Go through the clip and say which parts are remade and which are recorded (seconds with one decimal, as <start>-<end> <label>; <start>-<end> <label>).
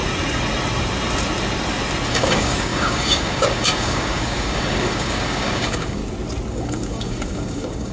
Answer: 0.0-2.1 recorded; 2.1-6.0 remade; 6.0-6.5 recorded; 6.5-7.9 remade